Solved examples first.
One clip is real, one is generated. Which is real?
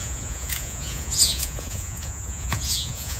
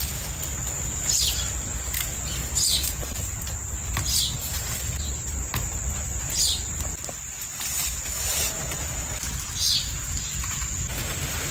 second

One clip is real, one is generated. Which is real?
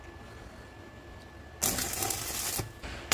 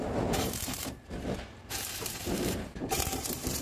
first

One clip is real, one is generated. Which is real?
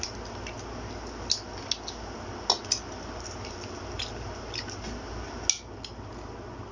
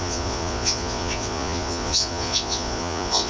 first